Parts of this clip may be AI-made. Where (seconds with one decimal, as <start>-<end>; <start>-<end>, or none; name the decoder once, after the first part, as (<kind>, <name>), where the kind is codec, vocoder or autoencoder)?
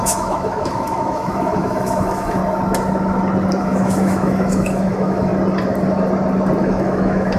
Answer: 0.0-2.4 (autoencoder, DAC-VAE); 3.6-5.3; 6.6-7.4